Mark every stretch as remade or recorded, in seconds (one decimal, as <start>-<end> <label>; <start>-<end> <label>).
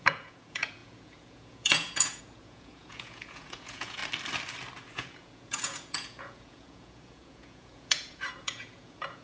0.0-4.0 remade; 4.0-4.9 recorded; 4.9-9.2 remade